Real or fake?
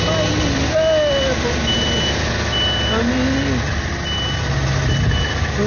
real